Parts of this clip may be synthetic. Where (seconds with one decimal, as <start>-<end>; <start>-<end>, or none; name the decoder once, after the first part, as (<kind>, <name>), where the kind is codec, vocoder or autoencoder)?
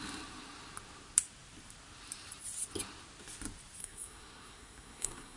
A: 3.8-5.4 (codec, SNAC)